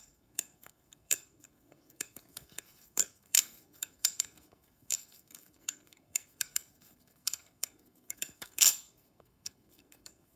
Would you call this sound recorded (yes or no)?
no